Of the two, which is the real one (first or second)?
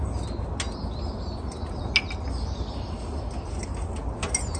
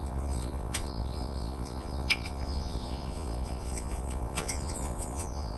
first